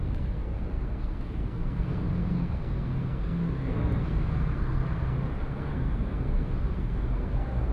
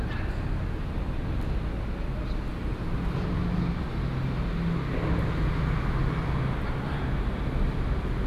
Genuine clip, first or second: second